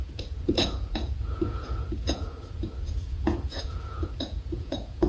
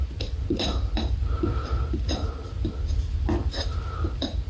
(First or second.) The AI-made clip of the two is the first